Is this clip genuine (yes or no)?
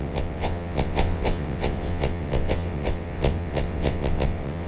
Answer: no